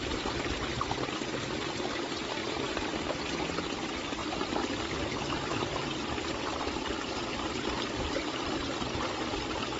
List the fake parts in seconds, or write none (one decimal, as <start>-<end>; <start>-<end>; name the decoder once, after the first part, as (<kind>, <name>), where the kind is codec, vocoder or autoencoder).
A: 0.0-2.4 (vocoder, BigVGAN v2); 3.8-9.8